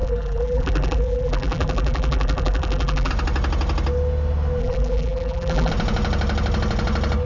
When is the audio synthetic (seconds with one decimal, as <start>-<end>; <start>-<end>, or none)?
0.0-3.1; 4.6-5.7